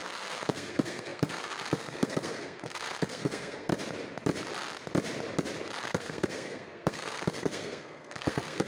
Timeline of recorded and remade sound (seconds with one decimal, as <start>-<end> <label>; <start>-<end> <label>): 0.0-3.7 remade; 3.7-5.8 recorded; 5.8-8.7 remade